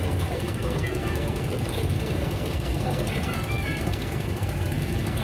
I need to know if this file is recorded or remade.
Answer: remade